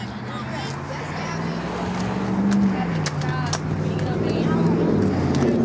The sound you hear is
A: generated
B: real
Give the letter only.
B